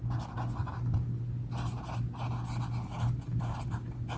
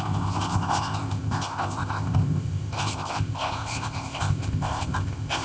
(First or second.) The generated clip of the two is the second